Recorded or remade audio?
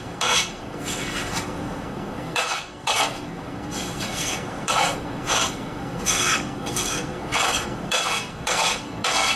remade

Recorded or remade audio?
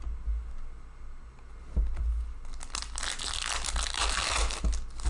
recorded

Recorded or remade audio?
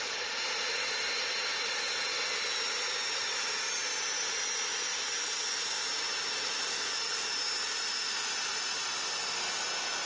recorded